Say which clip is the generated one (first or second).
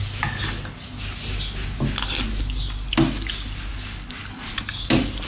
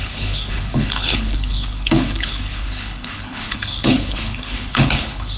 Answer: second